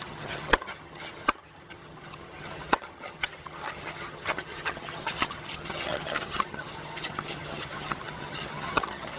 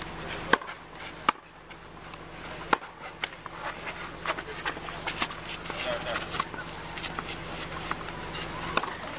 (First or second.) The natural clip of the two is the second